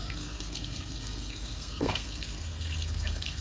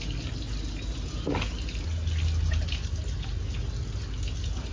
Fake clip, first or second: first